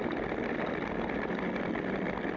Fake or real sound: real